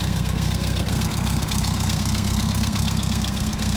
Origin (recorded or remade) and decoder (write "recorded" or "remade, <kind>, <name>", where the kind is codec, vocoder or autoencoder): remade, codec, SNAC